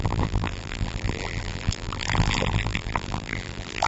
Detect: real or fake fake